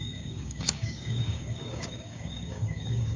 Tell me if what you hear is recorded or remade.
remade